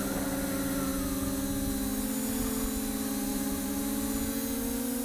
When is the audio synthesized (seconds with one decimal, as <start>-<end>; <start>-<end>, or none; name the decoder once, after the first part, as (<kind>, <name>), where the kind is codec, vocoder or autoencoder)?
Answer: 3.3-3.8 (vocoder, BigVGAN v2)